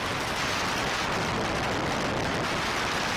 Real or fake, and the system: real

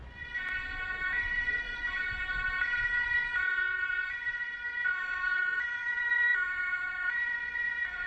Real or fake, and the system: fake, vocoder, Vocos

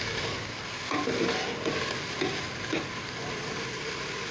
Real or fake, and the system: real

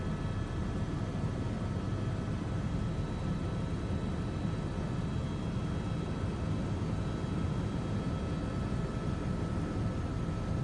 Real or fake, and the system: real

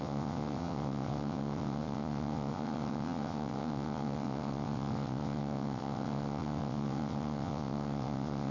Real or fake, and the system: fake, vocoder, WaveNeXt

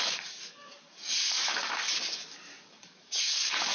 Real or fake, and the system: fake, codec, DAC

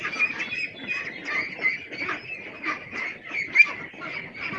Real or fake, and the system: real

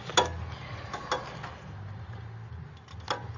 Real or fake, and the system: real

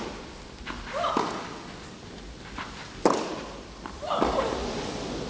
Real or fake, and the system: real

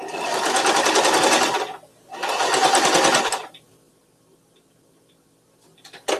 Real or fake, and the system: real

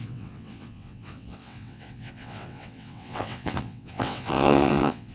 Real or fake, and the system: fake, vocoder, WaveNeXt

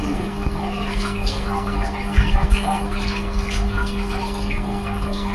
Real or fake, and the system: fake, codec, SNAC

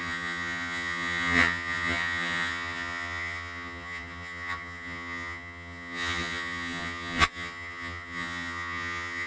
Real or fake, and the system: fake, vocoder, HiFi-GAN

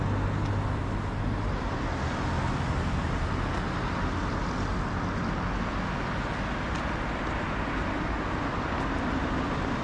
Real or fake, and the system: real